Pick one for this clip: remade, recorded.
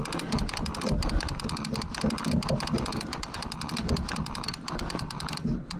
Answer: recorded